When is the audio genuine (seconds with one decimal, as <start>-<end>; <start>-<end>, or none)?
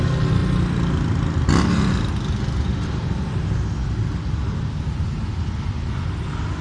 0.0-6.6